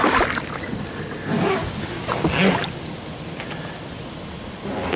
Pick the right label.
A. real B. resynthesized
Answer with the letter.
A